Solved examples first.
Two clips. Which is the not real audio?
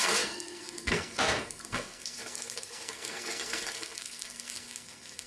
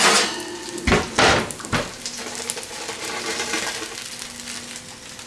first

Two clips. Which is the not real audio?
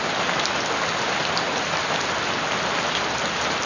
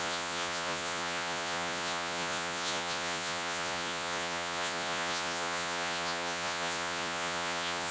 second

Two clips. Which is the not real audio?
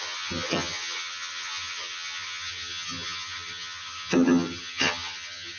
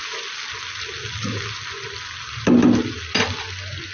first